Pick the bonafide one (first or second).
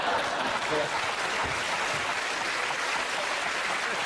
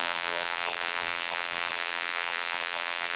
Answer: first